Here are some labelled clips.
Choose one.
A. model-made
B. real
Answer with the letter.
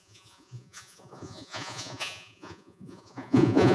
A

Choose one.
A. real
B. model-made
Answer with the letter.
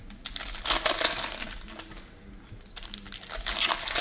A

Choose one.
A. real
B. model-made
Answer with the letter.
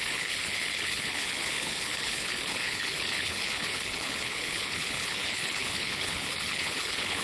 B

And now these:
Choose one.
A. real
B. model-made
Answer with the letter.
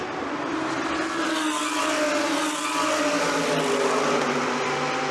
A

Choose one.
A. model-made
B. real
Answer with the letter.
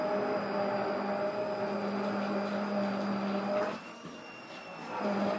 B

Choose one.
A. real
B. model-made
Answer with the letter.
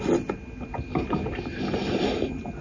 A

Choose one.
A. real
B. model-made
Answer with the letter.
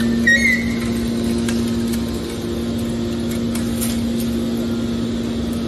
A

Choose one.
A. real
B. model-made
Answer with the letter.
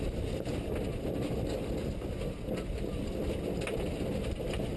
A